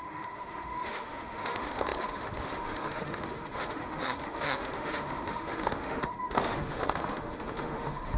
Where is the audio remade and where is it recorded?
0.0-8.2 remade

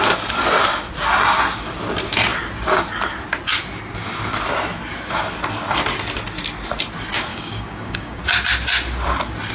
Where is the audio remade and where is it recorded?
0.0-7.3 recorded; 7.3-8.2 remade; 8.2-9.5 recorded

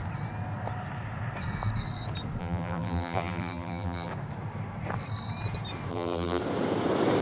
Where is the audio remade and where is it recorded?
0.0-2.4 recorded; 2.4-4.1 remade; 4.1-5.9 recorded; 5.9-6.4 remade; 6.4-7.2 recorded

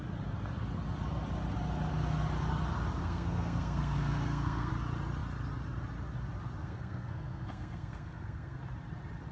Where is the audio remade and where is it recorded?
0.0-3.0 recorded; 3.0-4.7 remade; 4.7-6.6 recorded; 6.6-8.6 remade; 8.6-9.3 recorded

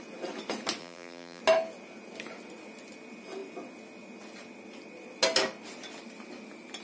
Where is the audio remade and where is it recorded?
0.0-0.8 recorded; 0.8-1.4 remade; 1.4-6.8 recorded

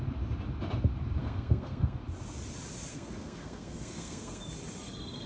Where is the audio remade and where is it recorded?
0.0-1.2 recorded; 1.2-2.0 remade; 2.0-2.9 recorded; 2.9-4.4 remade; 4.4-5.3 recorded